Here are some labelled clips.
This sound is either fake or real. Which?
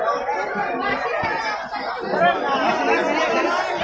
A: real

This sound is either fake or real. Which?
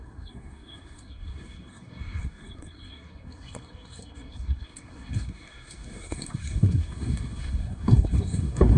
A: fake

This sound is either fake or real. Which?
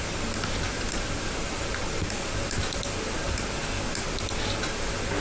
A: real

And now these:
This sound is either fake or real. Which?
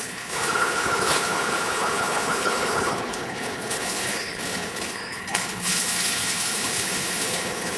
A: fake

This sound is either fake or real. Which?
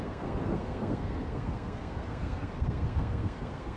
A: fake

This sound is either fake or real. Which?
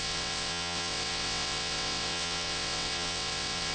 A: fake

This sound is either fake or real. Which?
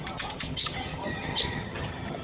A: fake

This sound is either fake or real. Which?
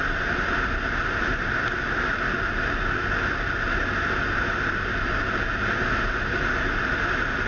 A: real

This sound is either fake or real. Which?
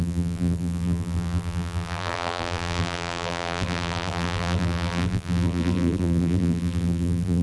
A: fake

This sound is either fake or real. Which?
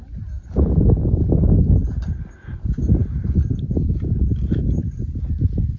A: real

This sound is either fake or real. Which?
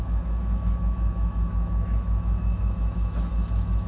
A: fake